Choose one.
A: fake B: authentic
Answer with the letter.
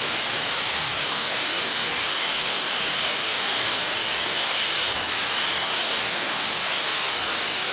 A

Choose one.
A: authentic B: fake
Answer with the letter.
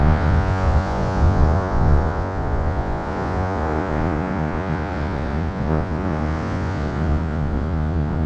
B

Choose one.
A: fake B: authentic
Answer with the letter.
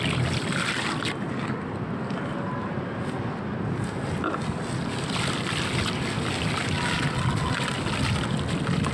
B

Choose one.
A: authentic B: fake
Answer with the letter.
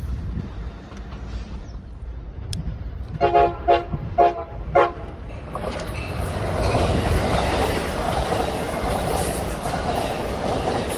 B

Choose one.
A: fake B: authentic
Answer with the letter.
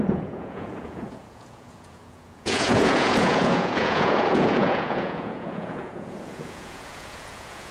A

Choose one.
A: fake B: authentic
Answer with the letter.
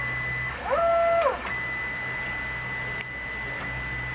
B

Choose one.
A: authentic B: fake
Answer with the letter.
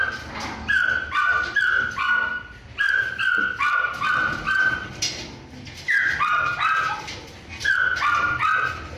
A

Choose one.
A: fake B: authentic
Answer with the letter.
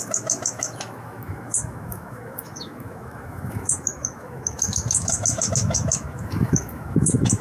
A